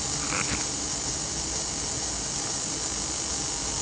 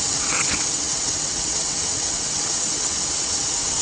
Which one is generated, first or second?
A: second